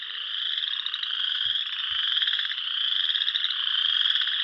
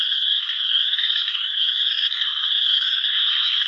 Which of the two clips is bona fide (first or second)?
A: first